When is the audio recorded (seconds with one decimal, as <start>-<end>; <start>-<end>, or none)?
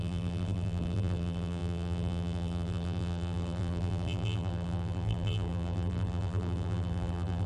none